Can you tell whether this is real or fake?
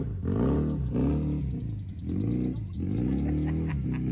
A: real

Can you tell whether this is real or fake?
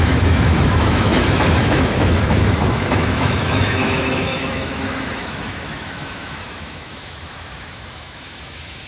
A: fake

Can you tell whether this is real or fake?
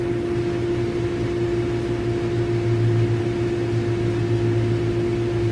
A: real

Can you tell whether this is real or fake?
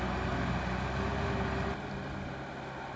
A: real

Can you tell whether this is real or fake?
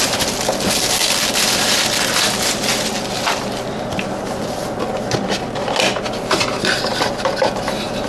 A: real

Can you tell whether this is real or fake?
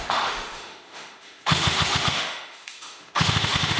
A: fake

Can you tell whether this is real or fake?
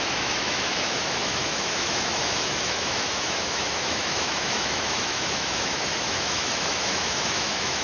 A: fake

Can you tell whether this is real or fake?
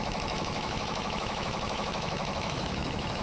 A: fake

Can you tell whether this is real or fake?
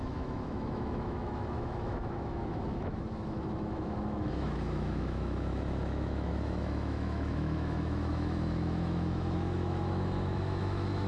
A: fake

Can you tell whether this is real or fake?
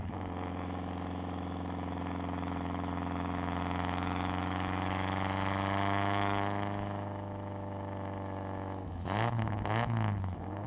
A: fake